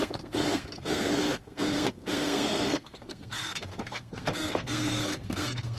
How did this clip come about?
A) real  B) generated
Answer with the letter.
B